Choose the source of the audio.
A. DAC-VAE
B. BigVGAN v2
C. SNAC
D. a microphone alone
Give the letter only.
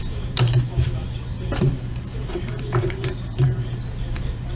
B